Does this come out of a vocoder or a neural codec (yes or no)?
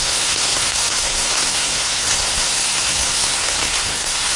yes